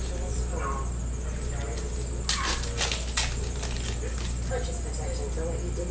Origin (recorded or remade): recorded